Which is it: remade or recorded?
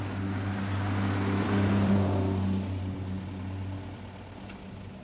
recorded